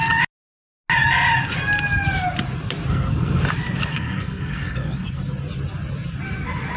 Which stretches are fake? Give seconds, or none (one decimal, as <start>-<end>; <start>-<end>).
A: 2.9-3.5; 3.9-5.2